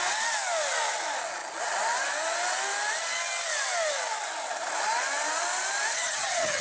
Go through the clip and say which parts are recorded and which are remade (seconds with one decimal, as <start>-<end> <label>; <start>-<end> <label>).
0.0-5.9 recorded; 5.9-6.6 remade